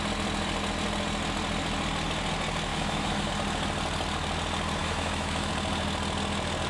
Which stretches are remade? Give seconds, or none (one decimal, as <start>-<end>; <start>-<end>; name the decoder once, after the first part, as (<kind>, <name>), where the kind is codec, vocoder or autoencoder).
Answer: 2.7-3.3 (autoencoder, DAC-VAE); 4.8-5.5